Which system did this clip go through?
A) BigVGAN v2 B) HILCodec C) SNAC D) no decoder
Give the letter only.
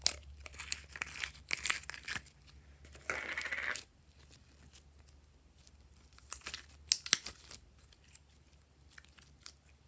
D